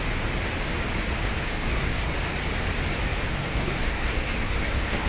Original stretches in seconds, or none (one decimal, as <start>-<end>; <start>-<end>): 0.0-1.3; 2.1-3.3